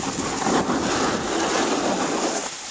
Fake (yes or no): no